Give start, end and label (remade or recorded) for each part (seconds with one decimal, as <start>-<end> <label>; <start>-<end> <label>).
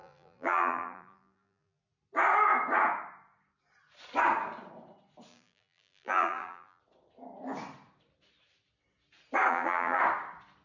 0.0-1.8 remade; 1.8-5.3 recorded; 5.3-6.8 remade; 6.8-9.5 recorded; 9.5-10.0 remade; 10.0-10.6 recorded